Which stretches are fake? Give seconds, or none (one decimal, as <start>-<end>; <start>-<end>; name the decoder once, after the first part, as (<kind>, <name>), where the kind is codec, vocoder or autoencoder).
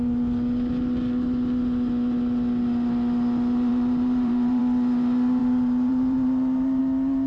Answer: 3.7-4.6 (vocoder, BigVGAN v2); 5.4-6.8